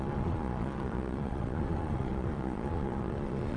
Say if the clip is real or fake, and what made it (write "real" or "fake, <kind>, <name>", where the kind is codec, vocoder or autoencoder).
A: fake, vocoder, Vocos